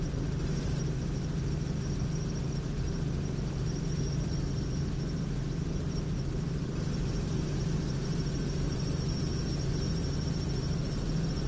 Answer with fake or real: fake